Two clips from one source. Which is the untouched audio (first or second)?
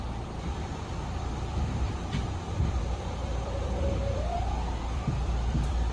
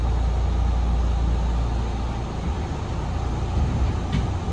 second